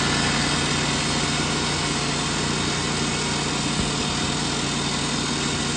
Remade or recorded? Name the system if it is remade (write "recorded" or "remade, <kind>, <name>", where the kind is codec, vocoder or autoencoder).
recorded